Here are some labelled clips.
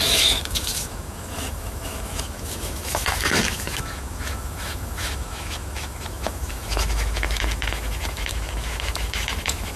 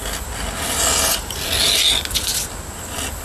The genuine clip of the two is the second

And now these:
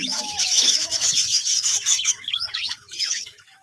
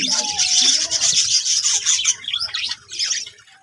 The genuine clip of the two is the second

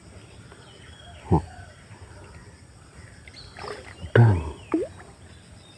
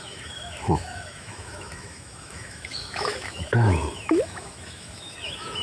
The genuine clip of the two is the first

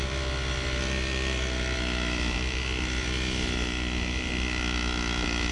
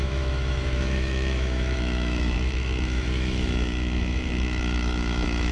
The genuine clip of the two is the first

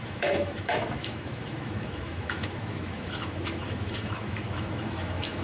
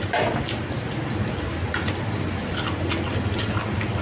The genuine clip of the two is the second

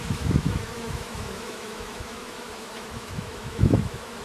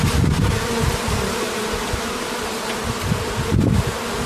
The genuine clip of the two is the second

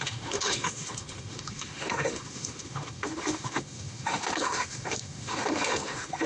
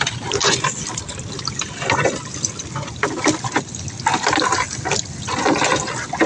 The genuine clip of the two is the second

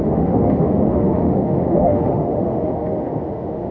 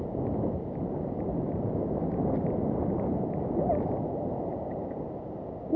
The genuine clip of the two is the second